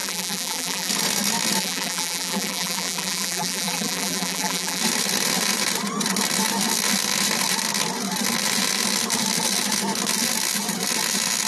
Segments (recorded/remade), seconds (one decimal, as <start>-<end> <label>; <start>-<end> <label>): 0.0-0.9 remade; 0.9-1.6 recorded; 1.6-4.8 remade; 4.8-11.5 recorded